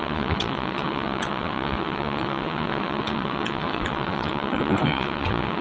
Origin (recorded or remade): remade